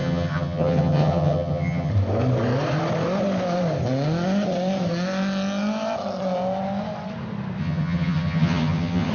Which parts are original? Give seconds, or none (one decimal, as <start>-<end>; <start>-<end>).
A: 1.9-7.6